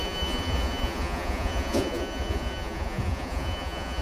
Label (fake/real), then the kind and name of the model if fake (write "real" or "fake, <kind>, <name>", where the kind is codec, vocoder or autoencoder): fake, vocoder, Vocos